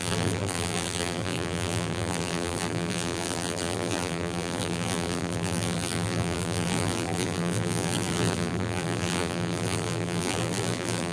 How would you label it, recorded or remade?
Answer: remade